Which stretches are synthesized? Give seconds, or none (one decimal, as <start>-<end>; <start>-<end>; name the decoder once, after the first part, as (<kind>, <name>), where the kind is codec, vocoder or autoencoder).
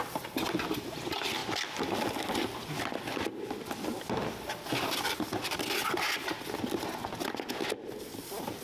none